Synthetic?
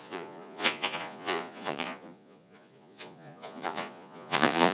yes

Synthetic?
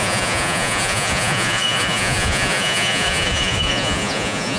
yes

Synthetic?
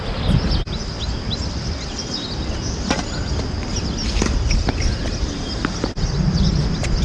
no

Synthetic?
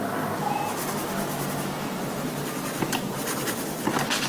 no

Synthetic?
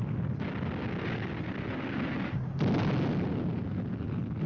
no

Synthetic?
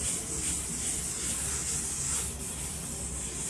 no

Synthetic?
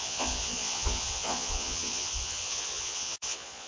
yes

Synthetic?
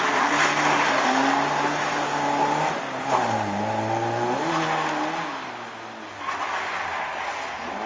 no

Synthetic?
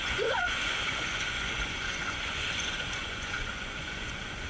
yes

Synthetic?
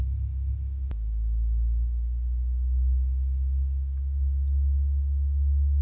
no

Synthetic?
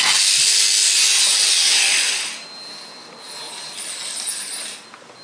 no